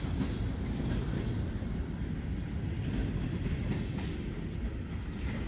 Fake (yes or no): no